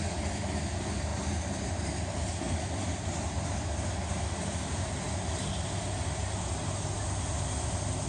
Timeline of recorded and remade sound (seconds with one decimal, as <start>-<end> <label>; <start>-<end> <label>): 0.0-8.1 recorded